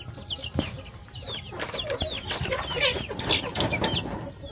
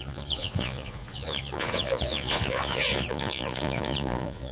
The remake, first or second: second